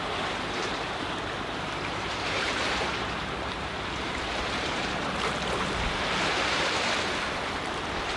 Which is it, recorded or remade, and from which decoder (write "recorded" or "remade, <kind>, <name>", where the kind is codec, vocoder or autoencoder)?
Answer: remade, vocoder, BigVGAN v2